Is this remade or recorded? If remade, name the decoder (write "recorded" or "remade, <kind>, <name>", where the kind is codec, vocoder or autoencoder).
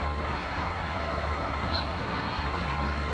remade, codec, SNAC